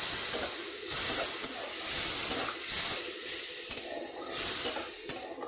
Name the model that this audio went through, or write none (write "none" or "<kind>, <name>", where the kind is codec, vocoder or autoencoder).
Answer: none